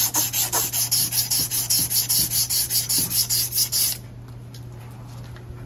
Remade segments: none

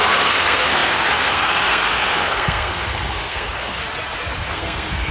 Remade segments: 0.0-3.8; 4.5-5.1

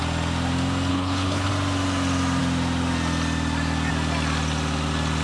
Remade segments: 0.9-1.5

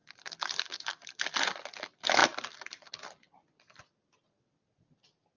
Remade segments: 0.0-0.9; 2.2-2.9

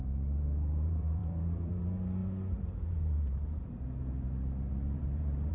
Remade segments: 0.0-5.5